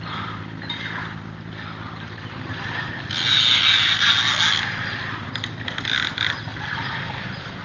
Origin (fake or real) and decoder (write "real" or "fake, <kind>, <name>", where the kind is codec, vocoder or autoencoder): real